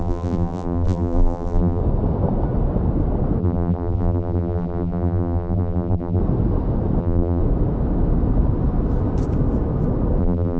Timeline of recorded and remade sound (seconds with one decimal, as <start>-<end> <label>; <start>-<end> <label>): 0.0-1.8 remade; 1.8-3.4 recorded; 3.4-6.2 remade; 6.2-7.0 recorded; 7.0-7.4 remade; 7.4-10.2 recorded; 10.2-10.6 remade